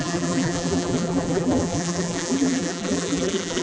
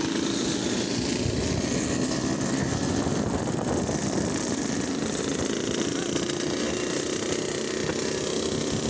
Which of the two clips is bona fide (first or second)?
second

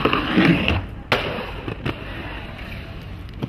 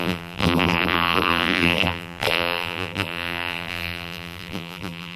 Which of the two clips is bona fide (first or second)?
first